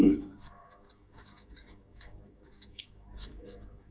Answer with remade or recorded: remade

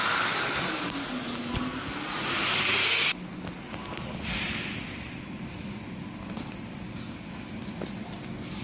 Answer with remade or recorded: recorded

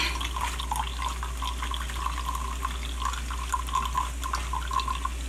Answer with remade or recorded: recorded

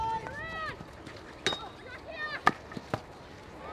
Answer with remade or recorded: recorded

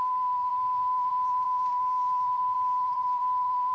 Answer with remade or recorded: remade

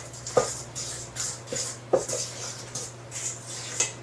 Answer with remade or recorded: recorded